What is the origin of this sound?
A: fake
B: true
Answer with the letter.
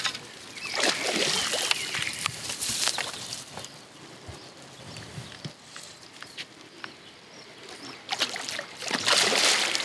B